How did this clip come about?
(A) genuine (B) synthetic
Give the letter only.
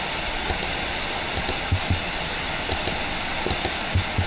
A